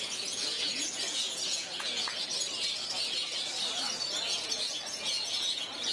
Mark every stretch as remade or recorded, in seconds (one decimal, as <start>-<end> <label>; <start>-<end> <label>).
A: 0.0-2.3 remade; 2.3-4.1 recorded; 4.1-5.9 remade